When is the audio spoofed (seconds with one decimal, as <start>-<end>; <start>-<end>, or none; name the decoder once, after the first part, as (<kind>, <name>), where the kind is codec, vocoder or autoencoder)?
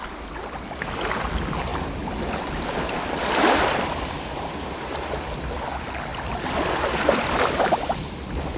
1.7-4.2 (vocoder, BigVGAN v2); 6.1-7.6